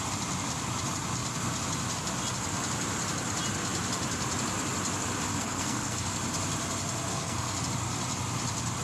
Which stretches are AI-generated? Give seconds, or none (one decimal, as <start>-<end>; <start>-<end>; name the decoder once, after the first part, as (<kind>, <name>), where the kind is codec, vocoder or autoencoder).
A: 5.3-6.2 (codec, SNAC); 7.1-7.6